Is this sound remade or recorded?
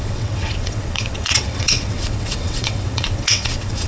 remade